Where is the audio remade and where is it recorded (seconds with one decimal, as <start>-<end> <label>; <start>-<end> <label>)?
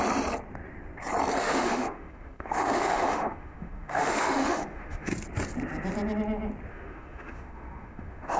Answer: 0.0-1.4 recorded; 1.4-5.1 remade; 5.1-6.7 recorded; 6.7-8.4 remade